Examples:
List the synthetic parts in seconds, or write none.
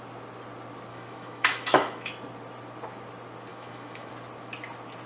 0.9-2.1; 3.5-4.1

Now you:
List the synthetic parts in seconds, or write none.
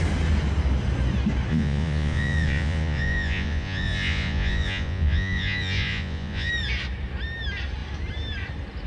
1.5-6.5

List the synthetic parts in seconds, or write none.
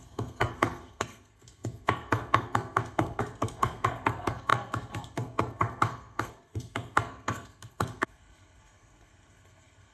0.0-9.9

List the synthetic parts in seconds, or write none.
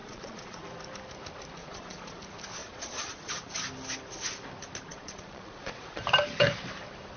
0.0-0.6; 1.6-2.2; 2.6-3.3; 4.9-6.0